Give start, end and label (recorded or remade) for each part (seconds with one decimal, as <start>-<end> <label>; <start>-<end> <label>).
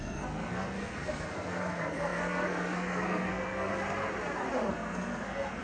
0.0-3.7 remade; 3.7-4.7 recorded; 4.7-5.6 remade